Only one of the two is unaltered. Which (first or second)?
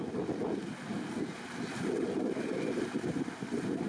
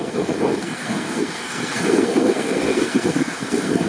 first